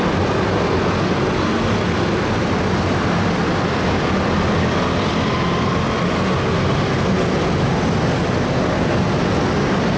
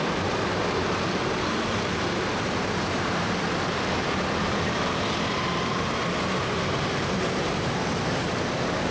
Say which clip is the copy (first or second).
second